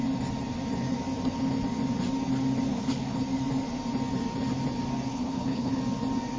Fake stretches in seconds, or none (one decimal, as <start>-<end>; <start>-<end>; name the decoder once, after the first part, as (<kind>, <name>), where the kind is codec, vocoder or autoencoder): 2.7-3.2 (codec, HILCodec); 5.1-5.8